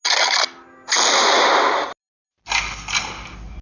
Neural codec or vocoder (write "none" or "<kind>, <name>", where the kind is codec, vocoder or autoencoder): none